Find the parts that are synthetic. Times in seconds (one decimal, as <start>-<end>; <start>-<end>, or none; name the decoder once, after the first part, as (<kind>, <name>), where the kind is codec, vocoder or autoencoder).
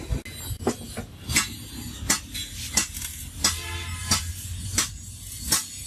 none